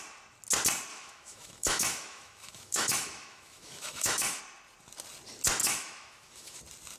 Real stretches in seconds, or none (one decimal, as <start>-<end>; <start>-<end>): 0.0-0.9; 4.4-5.6; 6.6-7.0